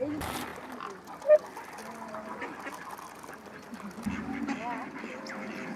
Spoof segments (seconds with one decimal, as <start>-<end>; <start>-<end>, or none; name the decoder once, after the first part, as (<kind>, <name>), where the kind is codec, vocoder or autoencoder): none